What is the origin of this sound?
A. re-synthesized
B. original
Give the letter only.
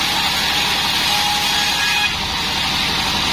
B